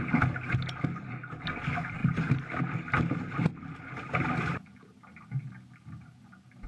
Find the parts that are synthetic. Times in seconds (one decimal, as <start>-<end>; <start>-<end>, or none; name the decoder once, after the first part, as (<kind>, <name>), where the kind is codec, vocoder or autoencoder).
none